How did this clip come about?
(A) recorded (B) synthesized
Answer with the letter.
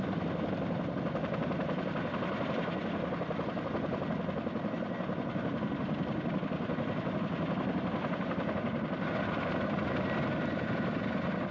A